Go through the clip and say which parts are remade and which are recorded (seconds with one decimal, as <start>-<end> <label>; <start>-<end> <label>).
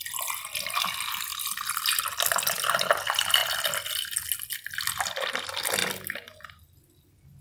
0.0-7.4 recorded